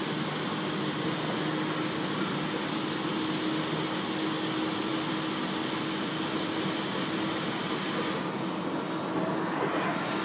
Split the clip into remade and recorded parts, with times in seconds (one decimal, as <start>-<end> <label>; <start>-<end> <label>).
0.0-10.2 recorded